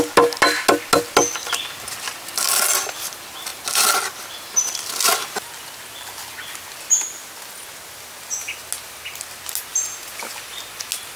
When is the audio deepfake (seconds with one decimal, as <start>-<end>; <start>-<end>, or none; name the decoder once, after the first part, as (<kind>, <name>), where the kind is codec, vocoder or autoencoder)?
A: none